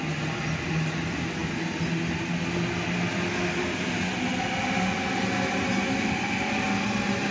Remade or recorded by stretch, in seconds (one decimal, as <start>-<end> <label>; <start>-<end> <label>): 0.0-7.3 recorded